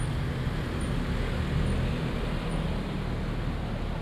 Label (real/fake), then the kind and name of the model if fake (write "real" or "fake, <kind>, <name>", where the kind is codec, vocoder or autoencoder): real